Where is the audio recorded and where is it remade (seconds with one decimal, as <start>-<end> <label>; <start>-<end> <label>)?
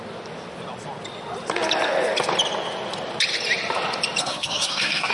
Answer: 0.0-4.2 recorded; 4.2-5.1 remade